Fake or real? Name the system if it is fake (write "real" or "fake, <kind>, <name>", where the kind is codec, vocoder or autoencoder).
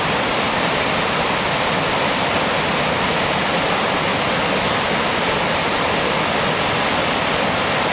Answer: real